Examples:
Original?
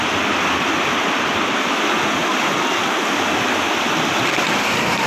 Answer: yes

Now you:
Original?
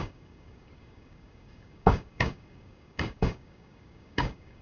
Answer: no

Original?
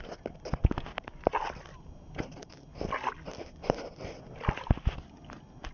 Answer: yes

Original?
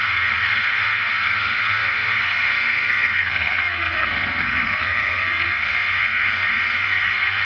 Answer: no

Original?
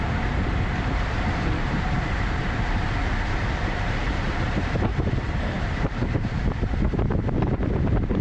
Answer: no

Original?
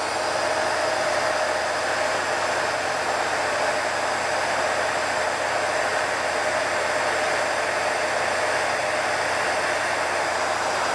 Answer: yes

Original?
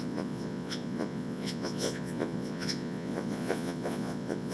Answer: no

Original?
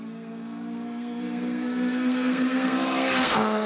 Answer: no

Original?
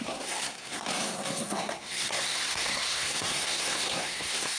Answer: no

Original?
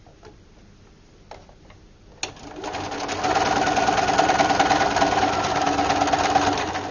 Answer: yes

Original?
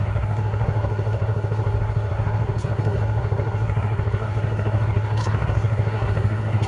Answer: no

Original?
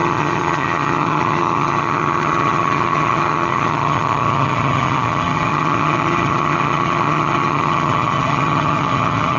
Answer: no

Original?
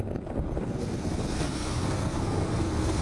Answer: no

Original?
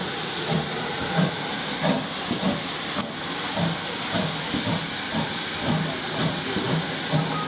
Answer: yes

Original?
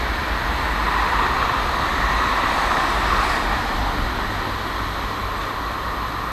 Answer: yes